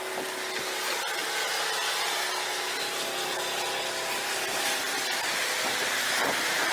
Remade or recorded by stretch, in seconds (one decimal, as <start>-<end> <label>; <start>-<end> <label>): 0.0-6.7 recorded